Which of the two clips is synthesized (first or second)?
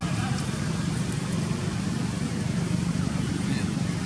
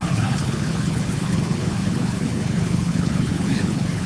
second